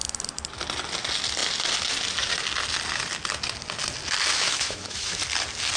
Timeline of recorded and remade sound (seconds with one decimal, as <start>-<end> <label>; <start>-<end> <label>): 0.0-4.3 recorded; 4.3-5.2 remade; 5.2-5.8 recorded